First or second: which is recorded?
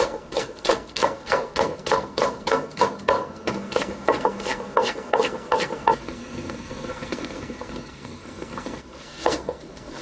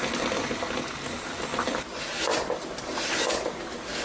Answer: second